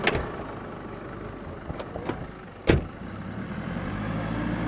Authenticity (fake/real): real